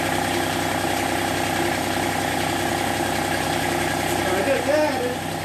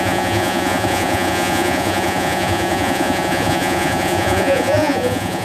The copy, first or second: second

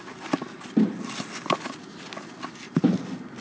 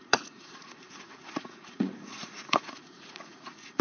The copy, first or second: second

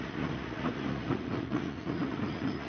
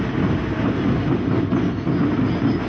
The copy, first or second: first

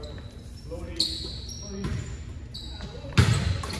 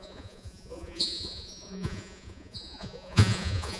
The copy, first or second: second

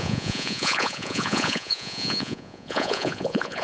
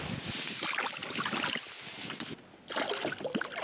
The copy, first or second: first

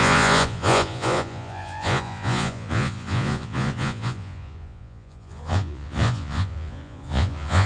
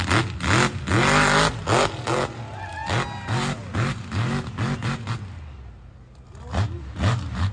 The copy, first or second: first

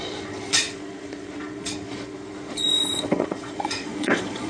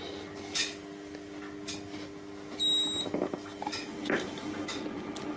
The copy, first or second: first